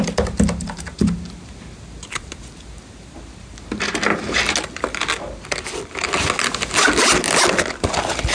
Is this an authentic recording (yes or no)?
yes